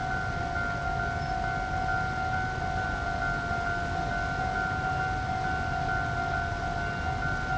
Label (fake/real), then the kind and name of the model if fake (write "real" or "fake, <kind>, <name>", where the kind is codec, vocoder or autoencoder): real